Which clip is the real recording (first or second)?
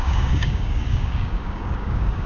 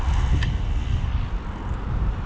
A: second